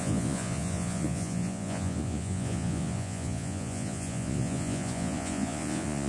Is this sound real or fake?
fake